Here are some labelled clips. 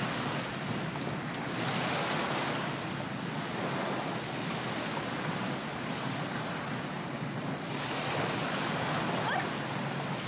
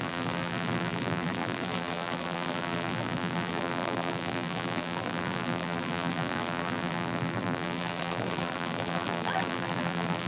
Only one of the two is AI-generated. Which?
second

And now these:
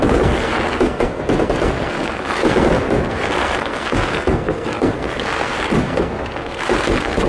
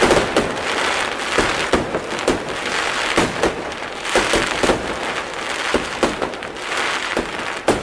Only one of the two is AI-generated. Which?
first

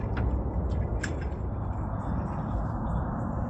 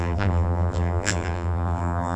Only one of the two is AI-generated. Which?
second